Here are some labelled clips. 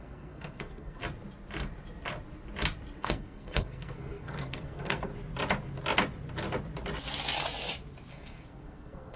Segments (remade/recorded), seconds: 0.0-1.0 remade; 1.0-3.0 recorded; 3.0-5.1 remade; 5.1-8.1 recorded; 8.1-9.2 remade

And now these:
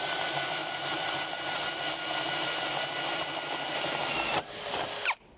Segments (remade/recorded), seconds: 0.0-5.4 recorded

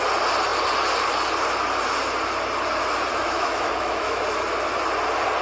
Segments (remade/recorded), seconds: 0.0-3.1 recorded; 3.1-4.2 remade; 4.2-5.4 recorded

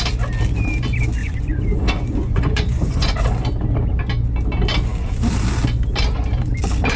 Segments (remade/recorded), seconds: 0.0-1.2 recorded; 1.2-3.2 remade; 3.2-7.0 recorded